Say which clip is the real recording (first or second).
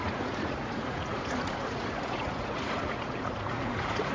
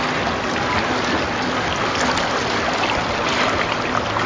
second